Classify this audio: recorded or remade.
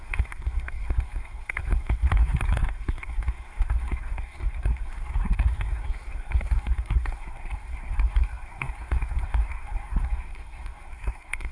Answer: remade